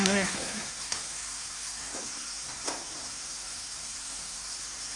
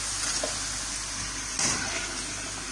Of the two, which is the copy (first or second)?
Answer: first